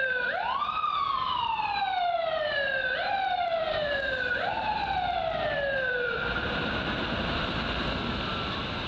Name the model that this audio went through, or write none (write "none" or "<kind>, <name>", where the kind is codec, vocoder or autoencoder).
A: vocoder, BigVGAN v2